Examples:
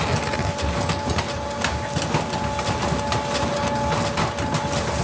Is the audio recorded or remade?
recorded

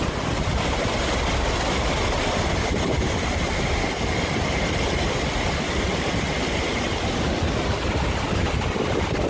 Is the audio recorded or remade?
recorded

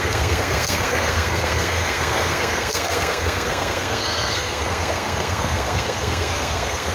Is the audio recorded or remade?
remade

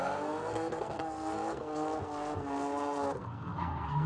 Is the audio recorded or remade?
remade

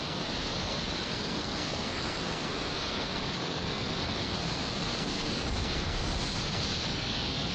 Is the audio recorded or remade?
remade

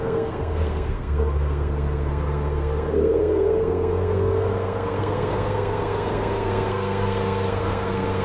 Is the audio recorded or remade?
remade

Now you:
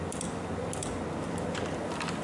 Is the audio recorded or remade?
recorded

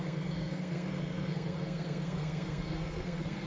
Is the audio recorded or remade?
remade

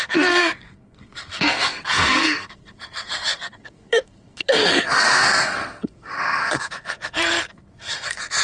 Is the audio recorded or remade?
remade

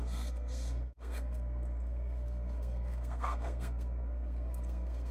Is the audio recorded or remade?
remade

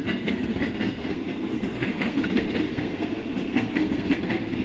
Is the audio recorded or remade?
remade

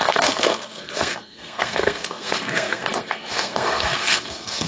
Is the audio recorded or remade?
remade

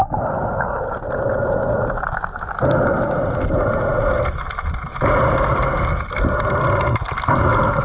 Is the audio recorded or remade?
recorded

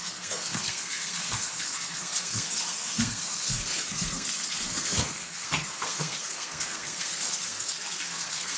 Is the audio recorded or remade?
remade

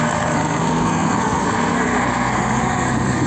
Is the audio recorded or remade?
remade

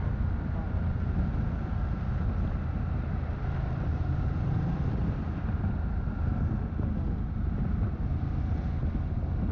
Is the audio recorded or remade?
recorded